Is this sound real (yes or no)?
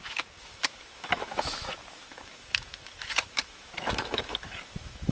no